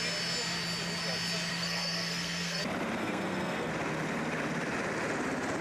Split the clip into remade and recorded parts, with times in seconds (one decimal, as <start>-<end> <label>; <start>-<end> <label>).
0.0-1.5 recorded; 1.5-2.6 remade; 2.6-3.0 recorded; 3.0-3.7 remade; 3.7-5.6 recorded